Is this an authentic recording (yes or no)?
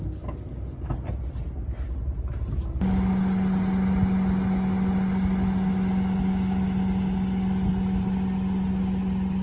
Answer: yes